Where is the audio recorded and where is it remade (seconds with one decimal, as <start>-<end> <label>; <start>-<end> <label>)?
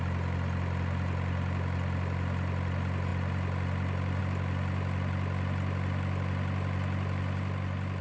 0.0-8.0 recorded